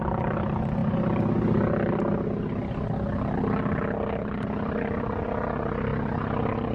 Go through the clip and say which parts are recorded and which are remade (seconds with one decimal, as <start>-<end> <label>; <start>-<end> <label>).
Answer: 0.0-6.7 recorded